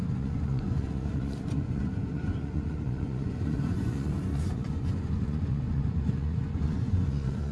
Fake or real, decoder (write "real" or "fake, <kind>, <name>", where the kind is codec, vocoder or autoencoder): fake, vocoder, Vocos